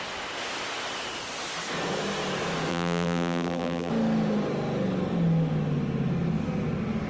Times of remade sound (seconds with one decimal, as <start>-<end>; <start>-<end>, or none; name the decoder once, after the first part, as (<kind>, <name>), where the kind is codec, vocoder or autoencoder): 2.7-3.9 (vocoder, BigVGAN v2)